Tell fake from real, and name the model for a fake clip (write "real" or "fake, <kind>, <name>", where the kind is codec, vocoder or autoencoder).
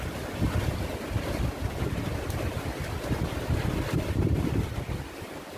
real